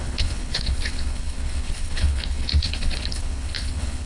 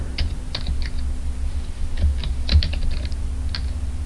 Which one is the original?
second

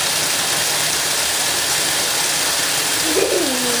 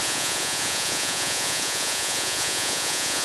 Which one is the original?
first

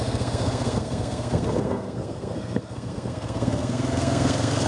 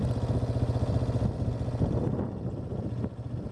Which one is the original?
second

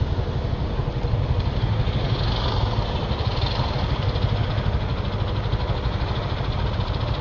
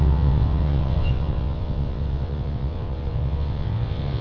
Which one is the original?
first